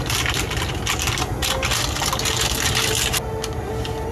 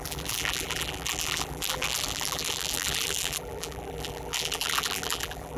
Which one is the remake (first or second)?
second